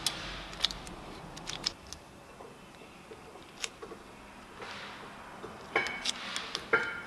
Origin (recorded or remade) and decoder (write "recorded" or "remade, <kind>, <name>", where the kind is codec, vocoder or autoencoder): recorded